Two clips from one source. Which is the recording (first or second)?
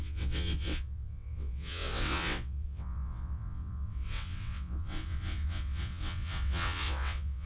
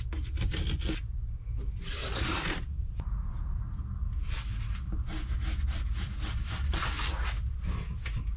second